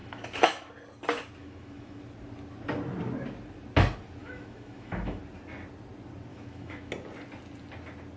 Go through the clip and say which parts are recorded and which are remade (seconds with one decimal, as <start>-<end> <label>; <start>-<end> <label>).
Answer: 0.0-0.7 remade; 0.7-1.4 recorded; 1.4-2.0 remade; 2.0-4.2 recorded; 4.2-5.2 remade; 5.2-6.3 recorded; 6.3-6.9 remade; 6.9-8.2 recorded

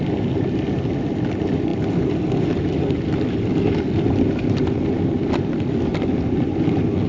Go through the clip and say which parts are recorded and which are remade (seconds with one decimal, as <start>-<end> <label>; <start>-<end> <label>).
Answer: 0.0-7.1 recorded

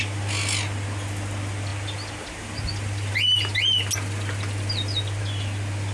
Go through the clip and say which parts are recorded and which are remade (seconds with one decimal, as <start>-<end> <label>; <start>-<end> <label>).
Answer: 0.0-5.9 recorded

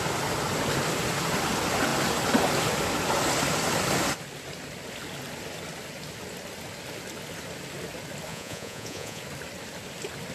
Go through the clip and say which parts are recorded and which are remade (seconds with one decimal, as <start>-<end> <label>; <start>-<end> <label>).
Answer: 0.0-8.3 recorded; 8.3-9.2 remade; 9.2-10.3 recorded

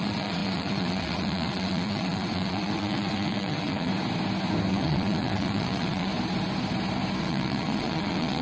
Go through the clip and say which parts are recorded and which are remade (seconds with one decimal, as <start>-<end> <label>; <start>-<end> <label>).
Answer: 0.0-3.9 remade; 3.9-4.7 recorded; 4.7-6.1 remade; 6.1-7.2 recorded; 7.2-8.4 remade